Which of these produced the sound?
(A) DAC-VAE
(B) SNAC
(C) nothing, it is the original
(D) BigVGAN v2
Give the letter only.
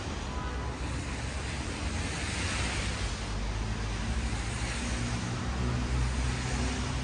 C